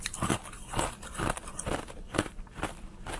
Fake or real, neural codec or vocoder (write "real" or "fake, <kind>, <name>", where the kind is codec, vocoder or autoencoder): real